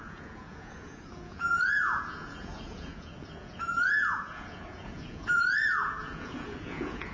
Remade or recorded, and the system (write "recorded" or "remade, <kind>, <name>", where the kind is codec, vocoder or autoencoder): remade, vocoder, Vocos